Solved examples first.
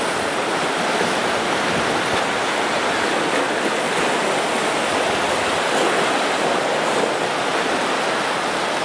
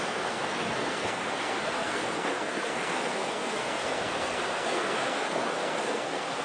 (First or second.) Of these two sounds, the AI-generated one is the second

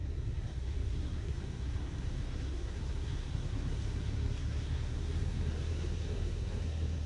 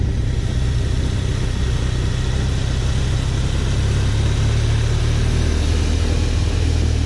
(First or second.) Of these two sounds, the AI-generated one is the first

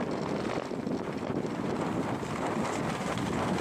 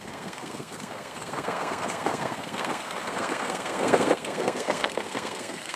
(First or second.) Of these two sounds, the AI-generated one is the second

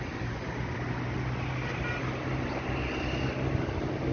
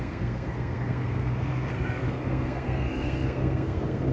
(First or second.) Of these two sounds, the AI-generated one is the second